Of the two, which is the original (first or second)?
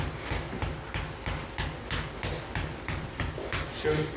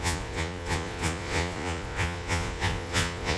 first